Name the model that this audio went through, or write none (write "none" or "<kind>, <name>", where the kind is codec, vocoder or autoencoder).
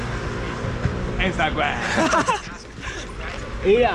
none